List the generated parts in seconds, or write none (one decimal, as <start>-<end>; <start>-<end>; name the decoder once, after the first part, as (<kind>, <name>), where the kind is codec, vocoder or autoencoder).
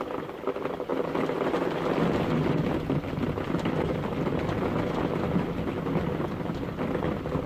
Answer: none